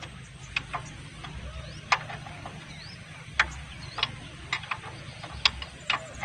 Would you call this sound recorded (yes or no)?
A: yes